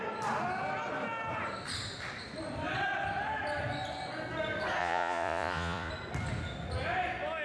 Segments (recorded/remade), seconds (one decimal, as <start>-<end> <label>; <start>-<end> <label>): 0.0-4.8 recorded; 4.8-5.9 remade; 5.9-7.4 recorded